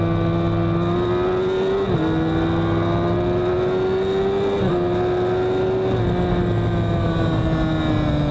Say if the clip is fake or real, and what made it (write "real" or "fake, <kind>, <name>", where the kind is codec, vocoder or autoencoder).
real